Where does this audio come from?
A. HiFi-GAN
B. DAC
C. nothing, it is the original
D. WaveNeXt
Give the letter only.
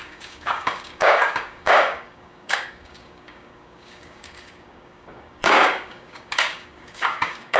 B